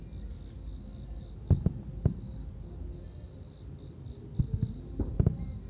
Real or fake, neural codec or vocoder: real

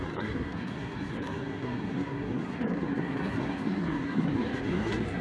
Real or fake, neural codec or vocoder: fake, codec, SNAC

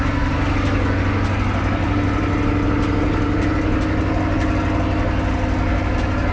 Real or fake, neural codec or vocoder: real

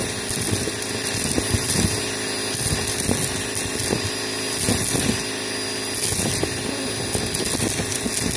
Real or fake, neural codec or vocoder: real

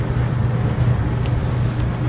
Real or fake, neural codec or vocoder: real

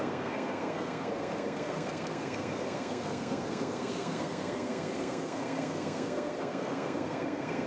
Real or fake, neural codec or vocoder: fake, codec, SNAC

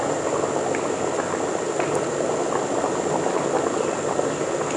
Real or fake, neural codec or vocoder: real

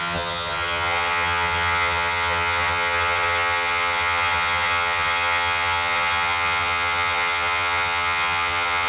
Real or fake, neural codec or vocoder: fake, vocoder, HiFi-GAN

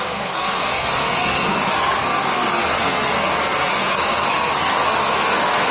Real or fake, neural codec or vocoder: fake, codec, SNAC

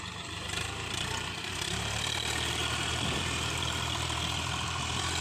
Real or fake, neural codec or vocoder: fake, vocoder, BigVGAN v2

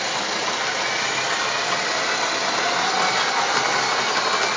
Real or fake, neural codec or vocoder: real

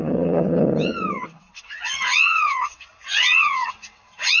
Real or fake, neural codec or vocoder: fake, vocoder, WaveNeXt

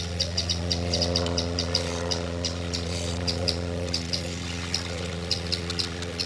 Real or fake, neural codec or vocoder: fake, vocoder, Vocos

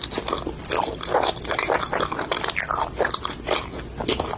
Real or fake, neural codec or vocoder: real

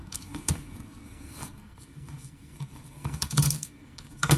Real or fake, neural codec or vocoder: fake, codec, SNAC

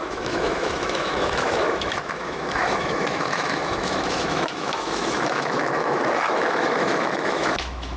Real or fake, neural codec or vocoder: fake, autoencoder, DAC-VAE